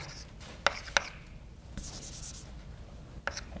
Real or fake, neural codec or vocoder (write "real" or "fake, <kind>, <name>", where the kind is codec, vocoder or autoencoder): real